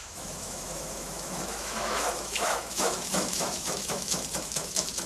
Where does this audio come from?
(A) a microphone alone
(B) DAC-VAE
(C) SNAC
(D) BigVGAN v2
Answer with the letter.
B